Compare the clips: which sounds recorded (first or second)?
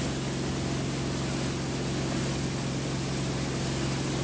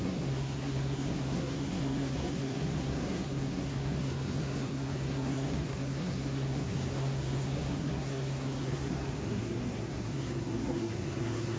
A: first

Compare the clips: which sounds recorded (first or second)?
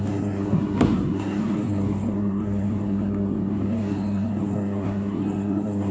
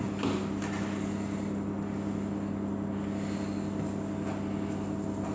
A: second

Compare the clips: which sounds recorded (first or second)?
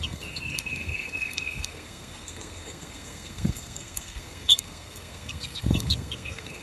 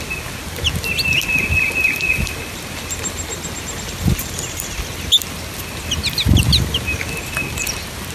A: second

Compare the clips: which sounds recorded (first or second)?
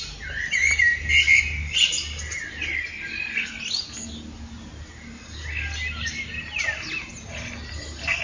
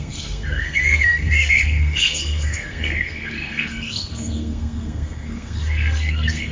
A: first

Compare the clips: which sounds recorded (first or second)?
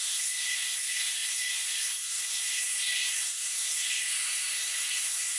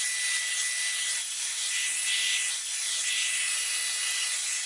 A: second